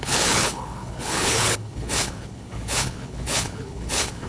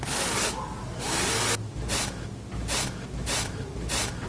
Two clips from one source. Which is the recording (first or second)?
second